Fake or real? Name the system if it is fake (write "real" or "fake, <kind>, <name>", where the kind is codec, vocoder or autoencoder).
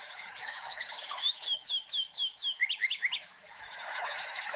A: fake, autoencoder, DAC-VAE